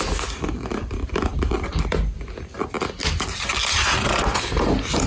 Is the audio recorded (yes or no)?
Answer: yes